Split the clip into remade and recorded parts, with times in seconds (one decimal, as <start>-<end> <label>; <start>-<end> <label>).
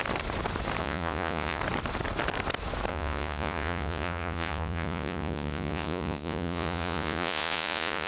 0.0-0.8 recorded; 0.8-1.6 remade; 1.6-2.9 recorded; 2.9-8.1 remade